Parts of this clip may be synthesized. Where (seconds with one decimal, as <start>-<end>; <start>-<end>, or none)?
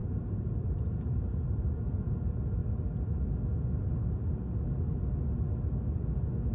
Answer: 0.0-1.9